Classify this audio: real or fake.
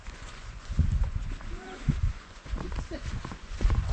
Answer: fake